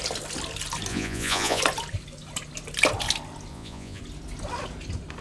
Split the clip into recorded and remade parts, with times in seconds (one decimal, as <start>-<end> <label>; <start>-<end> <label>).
0.0-0.9 recorded; 0.9-1.6 remade; 1.6-3.5 recorded; 3.5-4.0 remade; 4.0-5.2 recorded